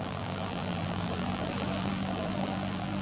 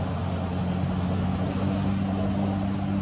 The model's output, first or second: first